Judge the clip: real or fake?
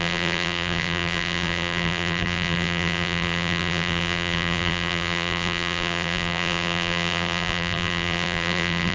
fake